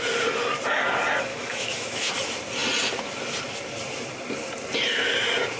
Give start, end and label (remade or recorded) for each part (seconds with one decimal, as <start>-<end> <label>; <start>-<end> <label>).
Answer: 0.0-1.3 recorded; 1.3-2.1 remade; 2.1-5.6 recorded